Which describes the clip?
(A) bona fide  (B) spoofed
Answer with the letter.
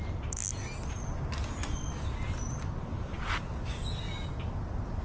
A